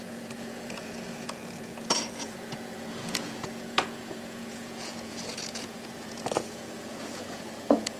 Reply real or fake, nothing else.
fake